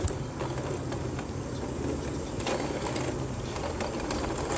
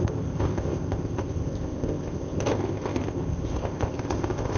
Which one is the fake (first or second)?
second